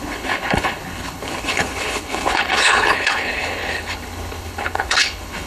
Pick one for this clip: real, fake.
fake